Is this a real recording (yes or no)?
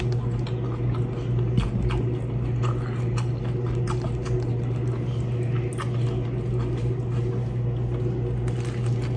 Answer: yes